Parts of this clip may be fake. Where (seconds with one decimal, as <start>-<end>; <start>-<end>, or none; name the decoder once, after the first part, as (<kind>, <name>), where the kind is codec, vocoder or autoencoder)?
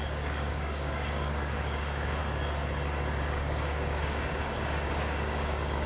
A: 0.0-2.2 (codec, DAC); 3.2-5.9